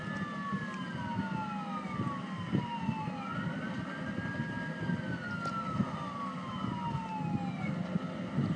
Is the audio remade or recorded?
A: recorded